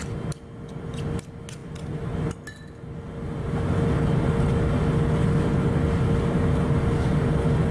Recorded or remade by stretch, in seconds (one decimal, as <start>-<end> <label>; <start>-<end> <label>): 0.0-7.7 recorded